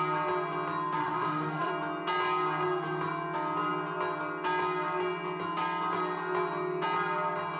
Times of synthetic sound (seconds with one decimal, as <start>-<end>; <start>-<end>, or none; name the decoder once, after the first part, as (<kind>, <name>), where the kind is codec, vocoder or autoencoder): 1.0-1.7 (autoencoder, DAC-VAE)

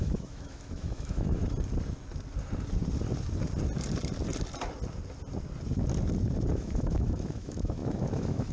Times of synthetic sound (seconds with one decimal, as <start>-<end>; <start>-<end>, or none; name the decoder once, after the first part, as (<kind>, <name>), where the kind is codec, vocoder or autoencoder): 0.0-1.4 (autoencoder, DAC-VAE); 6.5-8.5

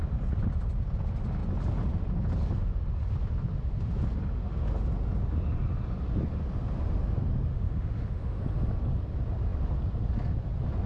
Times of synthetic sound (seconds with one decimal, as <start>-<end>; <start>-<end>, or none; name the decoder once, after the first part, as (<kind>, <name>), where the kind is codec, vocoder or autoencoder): 7.5-8.4 (autoencoder, DAC-VAE)